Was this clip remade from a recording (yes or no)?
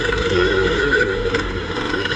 yes